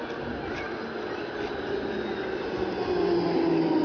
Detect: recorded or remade recorded